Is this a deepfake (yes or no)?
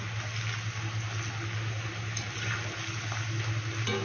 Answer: no